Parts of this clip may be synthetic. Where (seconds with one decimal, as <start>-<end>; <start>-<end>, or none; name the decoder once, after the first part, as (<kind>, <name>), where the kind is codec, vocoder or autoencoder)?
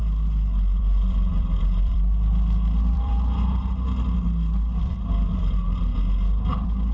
0.8-3.1 (vocoder, BigVGAN v2); 4.8-5.9; 6.5-6.9